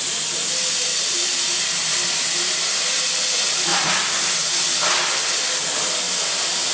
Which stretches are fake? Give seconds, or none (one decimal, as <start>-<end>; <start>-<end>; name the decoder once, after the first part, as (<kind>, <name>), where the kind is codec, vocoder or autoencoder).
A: none